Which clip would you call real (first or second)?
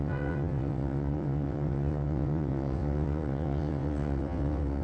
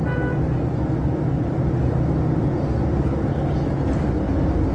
second